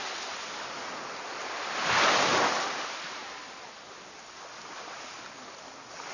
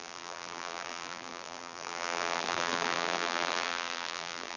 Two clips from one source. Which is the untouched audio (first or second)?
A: first